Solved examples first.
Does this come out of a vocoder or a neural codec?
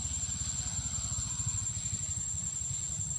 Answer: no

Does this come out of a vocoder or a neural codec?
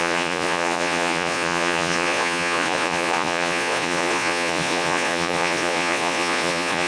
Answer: yes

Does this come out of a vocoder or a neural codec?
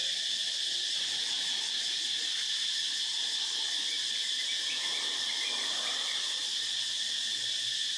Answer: no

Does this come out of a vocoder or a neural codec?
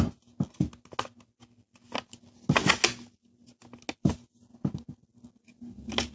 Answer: no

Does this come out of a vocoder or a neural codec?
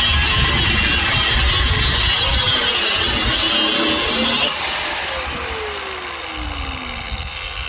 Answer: no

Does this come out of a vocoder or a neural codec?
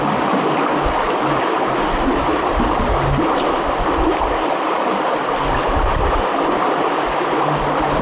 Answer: no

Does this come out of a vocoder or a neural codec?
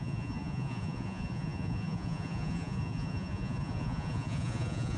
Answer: yes